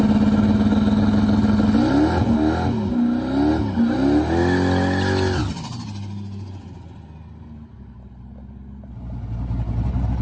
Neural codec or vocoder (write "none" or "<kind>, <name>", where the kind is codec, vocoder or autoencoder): none